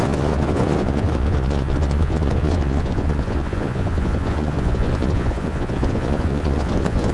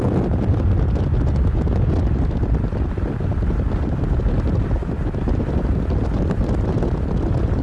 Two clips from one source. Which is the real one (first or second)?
second